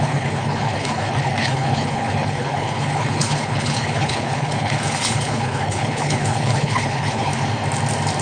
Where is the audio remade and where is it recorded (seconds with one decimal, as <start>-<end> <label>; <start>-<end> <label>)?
0.0-7.3 remade; 7.3-8.2 recorded